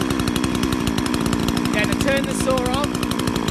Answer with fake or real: real